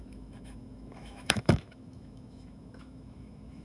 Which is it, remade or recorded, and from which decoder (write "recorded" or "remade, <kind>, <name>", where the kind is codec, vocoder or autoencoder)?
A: remade, autoencoder, DAC-VAE